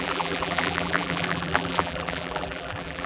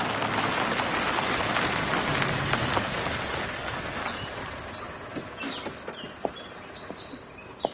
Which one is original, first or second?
second